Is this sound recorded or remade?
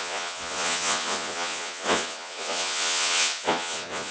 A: remade